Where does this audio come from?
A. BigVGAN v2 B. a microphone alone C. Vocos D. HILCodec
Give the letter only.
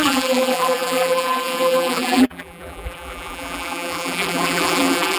A